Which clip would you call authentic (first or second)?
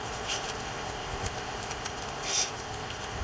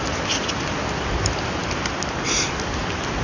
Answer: second